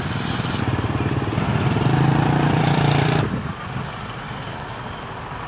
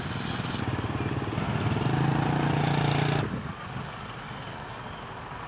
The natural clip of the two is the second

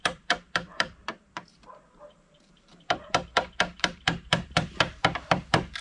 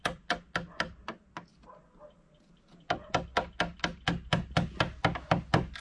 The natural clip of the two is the second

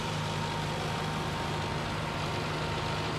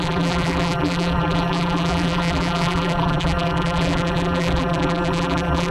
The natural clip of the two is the first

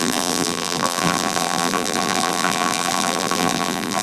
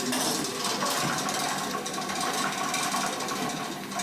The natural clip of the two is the second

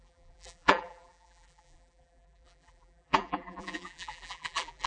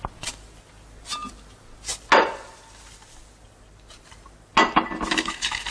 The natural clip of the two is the second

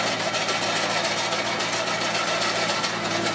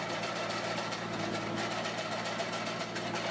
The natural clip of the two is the first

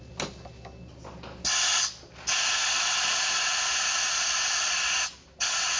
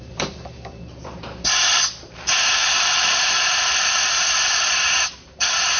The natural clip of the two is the first